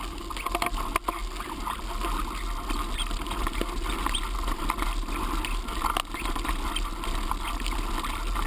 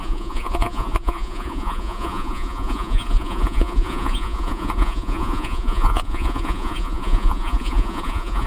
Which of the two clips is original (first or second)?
first